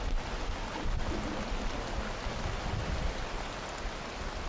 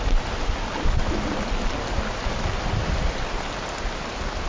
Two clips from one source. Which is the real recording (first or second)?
first